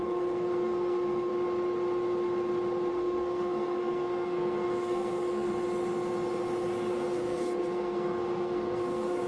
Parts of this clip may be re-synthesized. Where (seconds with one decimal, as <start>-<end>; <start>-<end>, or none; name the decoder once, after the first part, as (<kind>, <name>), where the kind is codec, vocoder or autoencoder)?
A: 0.0-1.3 (codec, SNAC); 2.9-5.5; 6.9-9.3